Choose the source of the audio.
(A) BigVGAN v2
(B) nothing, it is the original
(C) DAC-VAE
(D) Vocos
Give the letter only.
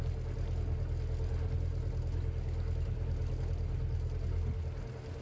B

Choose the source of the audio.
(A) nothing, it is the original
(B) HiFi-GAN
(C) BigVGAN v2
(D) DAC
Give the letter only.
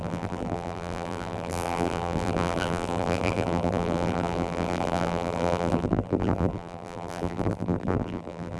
C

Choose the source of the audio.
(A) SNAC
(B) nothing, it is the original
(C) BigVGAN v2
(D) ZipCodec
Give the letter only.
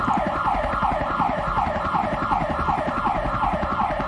B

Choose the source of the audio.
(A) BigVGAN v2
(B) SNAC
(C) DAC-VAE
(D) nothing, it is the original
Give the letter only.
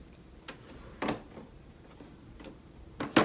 D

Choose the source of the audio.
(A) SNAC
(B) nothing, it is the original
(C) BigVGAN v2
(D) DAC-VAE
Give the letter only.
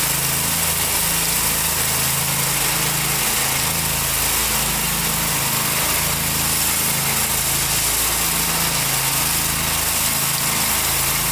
B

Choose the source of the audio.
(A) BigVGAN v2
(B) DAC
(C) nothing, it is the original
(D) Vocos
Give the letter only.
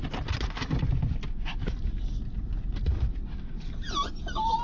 C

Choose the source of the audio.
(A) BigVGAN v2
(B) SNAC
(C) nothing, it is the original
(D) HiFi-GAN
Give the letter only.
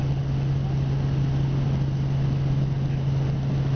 C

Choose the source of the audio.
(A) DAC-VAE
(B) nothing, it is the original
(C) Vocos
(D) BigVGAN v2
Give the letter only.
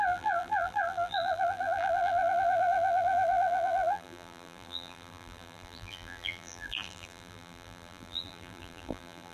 D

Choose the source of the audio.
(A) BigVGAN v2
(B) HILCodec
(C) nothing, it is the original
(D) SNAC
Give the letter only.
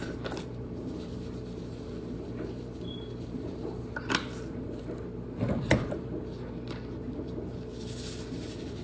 A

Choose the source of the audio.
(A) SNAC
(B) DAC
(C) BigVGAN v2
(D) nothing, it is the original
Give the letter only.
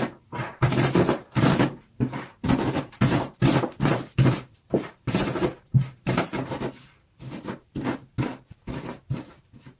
C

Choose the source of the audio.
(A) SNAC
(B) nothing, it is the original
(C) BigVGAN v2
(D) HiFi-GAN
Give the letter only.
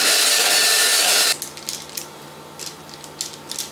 B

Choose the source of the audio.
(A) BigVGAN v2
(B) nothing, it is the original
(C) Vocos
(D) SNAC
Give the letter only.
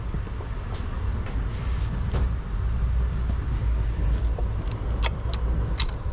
B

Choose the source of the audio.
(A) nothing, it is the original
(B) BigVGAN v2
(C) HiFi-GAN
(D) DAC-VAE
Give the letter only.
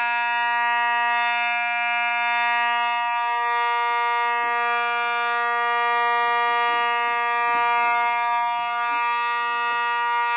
A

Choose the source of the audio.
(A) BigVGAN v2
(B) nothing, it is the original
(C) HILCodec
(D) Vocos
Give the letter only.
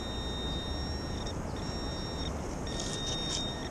B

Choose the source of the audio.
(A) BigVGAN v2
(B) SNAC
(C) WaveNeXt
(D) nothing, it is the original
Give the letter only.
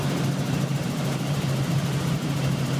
A